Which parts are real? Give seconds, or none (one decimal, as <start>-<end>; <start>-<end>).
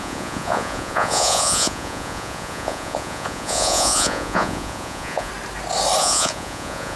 5.3-6.0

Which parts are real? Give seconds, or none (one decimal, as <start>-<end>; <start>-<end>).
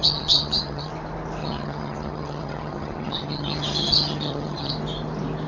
0.9-1.4; 4.7-5.5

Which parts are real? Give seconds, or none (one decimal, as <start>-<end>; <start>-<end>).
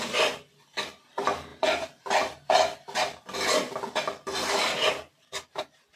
0.0-6.0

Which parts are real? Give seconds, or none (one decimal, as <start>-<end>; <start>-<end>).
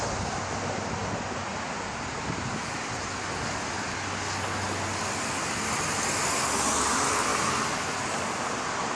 0.0-9.0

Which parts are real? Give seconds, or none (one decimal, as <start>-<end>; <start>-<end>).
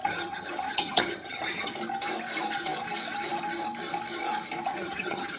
1.7-4.7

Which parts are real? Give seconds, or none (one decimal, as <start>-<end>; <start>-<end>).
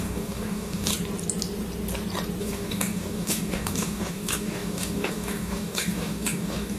0.9-2.4